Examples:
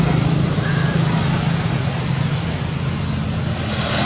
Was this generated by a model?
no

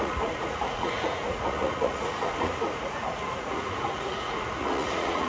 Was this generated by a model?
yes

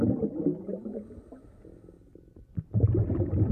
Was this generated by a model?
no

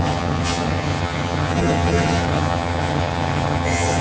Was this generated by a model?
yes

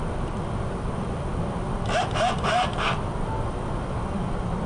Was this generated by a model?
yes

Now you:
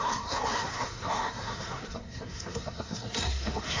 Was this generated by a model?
yes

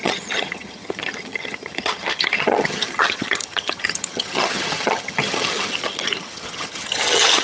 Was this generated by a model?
yes